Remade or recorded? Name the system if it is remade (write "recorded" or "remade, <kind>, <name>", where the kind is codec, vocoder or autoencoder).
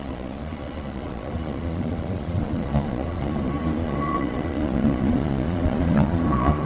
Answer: remade, vocoder, Vocos